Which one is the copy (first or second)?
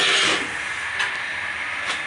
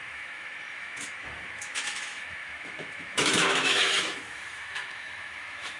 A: second